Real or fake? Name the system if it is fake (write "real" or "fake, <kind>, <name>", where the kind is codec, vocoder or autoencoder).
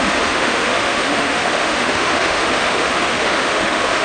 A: fake, autoencoder, DAC-VAE